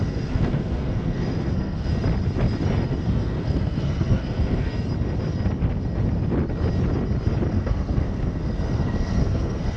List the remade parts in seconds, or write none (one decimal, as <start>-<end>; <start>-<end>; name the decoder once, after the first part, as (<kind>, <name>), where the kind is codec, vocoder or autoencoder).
0.0-1.9 (codec, SNAC); 2.9-4.7; 7.5-9.8